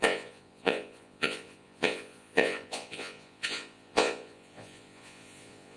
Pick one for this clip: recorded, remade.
remade